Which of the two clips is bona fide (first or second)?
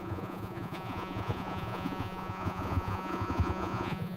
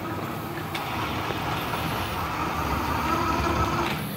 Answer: second